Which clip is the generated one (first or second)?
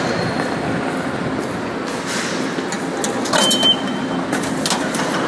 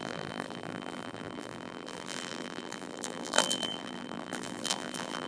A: second